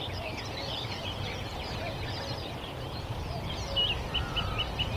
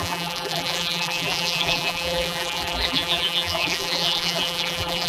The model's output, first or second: second